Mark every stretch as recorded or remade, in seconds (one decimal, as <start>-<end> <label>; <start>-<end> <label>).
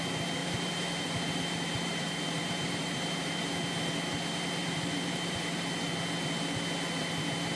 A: 0.0-0.4 recorded; 0.4-3.5 remade; 3.5-4.6 recorded; 4.6-5.7 remade; 5.7-7.6 recorded